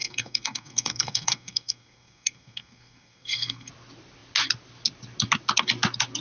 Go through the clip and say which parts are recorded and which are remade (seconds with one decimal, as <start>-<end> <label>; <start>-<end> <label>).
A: 0.0-3.7 remade; 3.7-6.2 recorded